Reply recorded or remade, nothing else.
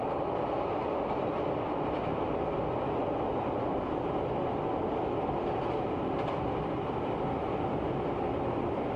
recorded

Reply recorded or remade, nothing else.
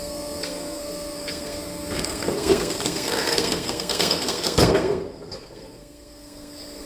remade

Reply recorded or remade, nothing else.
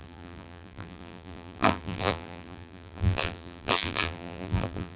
remade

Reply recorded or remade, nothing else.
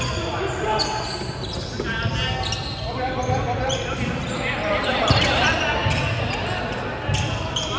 recorded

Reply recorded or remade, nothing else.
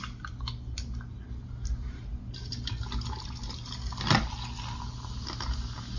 recorded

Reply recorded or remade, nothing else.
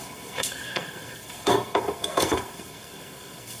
remade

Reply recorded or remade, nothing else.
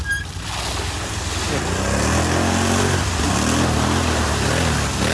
recorded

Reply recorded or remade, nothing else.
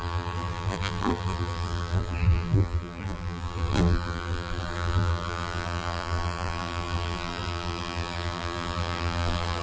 remade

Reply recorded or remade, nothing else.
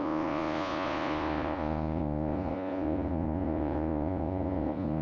remade